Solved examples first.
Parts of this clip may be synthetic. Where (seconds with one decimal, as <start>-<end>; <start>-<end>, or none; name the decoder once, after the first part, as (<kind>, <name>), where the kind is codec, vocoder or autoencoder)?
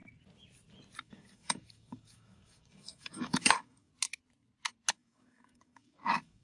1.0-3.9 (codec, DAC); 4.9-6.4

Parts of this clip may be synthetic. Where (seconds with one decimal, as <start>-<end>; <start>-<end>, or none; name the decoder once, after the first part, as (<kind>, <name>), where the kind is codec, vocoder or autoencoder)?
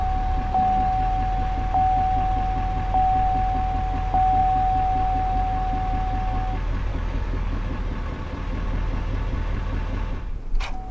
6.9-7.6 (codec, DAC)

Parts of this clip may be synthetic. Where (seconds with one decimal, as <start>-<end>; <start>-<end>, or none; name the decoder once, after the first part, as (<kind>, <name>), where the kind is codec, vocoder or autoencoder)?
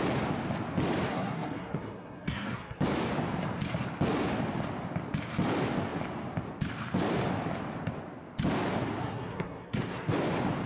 1.1-2.8 (codec, SNAC); 9.0-10.1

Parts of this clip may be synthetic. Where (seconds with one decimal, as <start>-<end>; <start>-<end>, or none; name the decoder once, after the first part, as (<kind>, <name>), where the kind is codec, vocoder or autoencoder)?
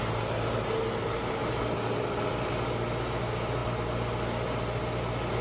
none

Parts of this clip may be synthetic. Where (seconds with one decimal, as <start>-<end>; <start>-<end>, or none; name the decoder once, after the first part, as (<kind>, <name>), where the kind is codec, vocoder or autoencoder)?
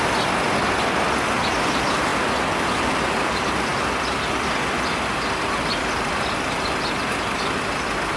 none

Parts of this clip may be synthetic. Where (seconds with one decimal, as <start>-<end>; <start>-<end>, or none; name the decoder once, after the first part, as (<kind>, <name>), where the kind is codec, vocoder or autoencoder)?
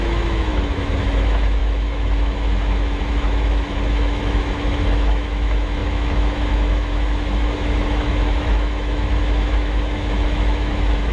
0.0-11.1 (autoencoder, DAC-VAE)